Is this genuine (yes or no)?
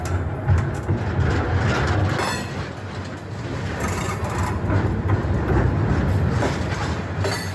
yes